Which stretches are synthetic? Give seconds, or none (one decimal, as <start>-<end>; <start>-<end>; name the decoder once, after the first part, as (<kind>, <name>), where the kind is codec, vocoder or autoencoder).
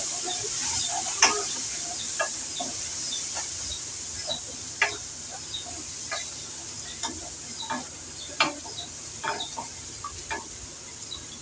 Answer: none